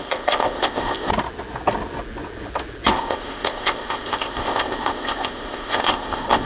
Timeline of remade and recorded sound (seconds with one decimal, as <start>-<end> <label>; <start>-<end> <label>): 0.0-1.1 remade; 1.1-2.9 recorded; 2.9-6.5 remade